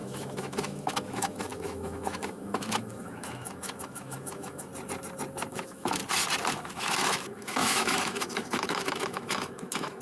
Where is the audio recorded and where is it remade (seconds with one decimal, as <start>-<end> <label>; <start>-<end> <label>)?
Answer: 0.0-4.7 remade; 4.7-5.5 recorded; 5.5-6.0 remade; 6.0-6.5 recorded; 6.5-10.0 remade